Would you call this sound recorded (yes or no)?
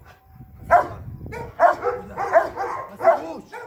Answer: yes